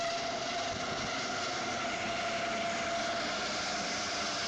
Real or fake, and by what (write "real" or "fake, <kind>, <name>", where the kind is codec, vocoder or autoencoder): real